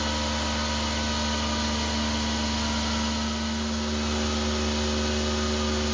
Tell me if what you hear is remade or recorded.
recorded